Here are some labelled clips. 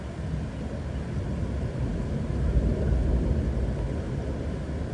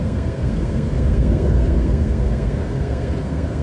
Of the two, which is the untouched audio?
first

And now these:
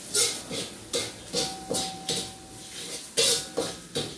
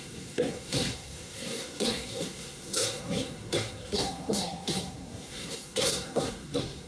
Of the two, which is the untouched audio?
first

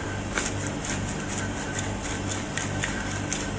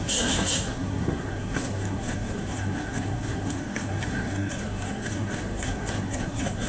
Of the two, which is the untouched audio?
first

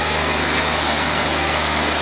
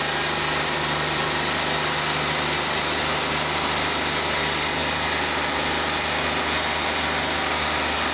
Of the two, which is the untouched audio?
second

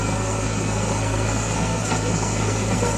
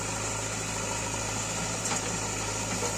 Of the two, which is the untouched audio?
second